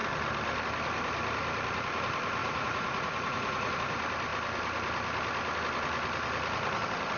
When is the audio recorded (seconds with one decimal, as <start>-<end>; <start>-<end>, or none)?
0.0-2.4; 3.7-7.2